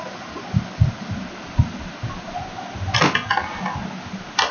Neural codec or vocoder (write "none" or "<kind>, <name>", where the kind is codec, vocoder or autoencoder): none